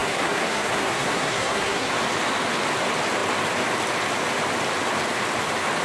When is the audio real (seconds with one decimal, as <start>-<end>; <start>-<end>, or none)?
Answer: 1.9-5.8